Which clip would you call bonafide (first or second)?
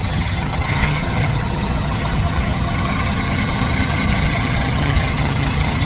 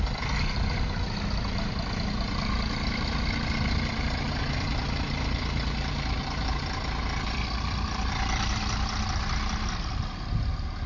second